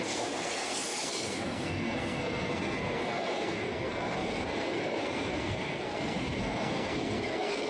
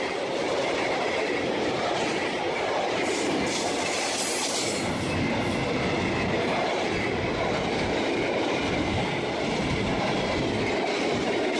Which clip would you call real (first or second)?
second